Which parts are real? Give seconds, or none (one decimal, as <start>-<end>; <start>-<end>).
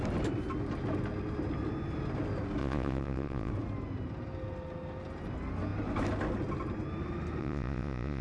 0.0-2.6; 3.5-7.4